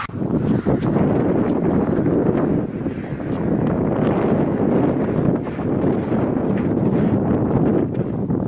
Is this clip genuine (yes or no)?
yes